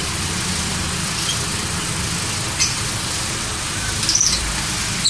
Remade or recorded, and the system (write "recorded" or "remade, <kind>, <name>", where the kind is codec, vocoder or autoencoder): recorded